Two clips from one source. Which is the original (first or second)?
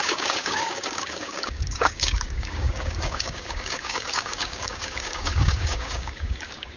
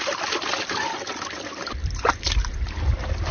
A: second